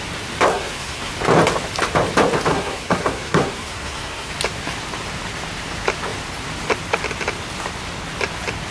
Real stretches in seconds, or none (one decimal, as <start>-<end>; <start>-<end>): 0.0-0.5; 1.1-2.5; 4.3-8.7

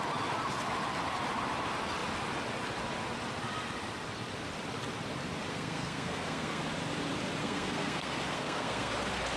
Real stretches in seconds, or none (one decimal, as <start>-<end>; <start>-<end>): 0.0-5.5; 6.6-7.4; 8.9-9.4

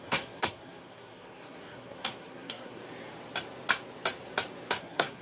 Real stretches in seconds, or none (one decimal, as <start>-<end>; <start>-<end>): 2.8-4.8

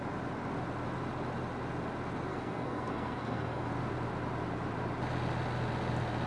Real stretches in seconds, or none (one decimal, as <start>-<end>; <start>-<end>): 0.0-2.3; 3.7-6.3

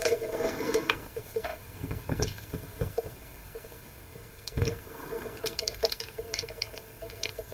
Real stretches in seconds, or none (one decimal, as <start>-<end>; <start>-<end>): none